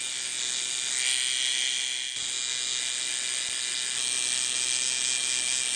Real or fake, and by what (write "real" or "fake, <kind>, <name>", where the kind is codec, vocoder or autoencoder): real